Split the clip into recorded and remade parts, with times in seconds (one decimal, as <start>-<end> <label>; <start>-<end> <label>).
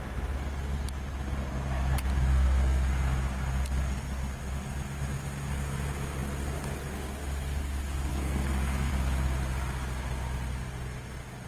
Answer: 0.0-2.3 recorded; 2.3-2.9 remade; 2.9-8.1 recorded; 8.1-8.9 remade; 8.9-11.5 recorded